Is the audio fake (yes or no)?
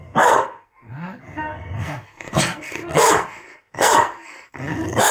yes